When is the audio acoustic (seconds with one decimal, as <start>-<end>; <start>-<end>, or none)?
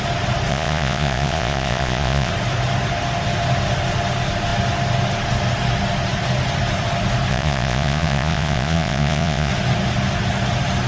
0.0-0.5; 2.3-7.3; 9.5-10.9